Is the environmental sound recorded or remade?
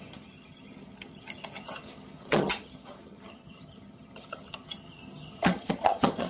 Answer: remade